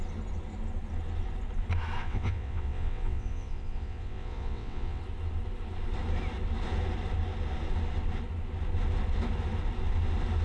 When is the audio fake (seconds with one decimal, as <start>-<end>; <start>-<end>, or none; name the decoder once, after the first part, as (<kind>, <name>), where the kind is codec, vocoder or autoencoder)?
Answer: 2.0-5.0 (vocoder, WaveNeXt)